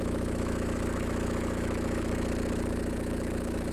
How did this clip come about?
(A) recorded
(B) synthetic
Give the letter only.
B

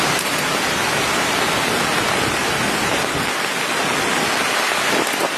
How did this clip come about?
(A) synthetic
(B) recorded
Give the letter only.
B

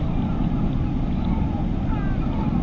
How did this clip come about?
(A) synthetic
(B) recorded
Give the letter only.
B